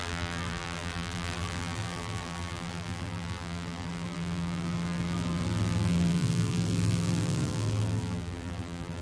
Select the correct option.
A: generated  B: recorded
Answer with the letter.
A